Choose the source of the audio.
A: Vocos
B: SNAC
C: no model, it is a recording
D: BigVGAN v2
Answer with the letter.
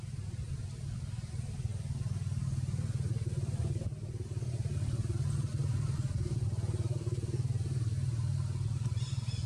C